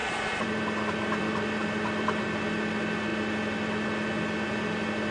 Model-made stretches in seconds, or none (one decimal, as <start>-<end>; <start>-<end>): 0.0-2.2